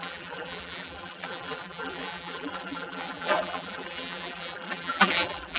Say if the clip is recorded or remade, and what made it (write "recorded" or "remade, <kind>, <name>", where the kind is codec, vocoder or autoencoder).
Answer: remade, vocoder, BigVGAN v2